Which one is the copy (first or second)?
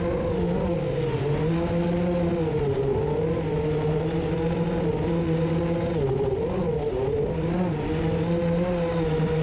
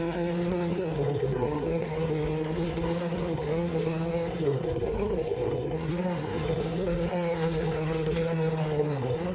second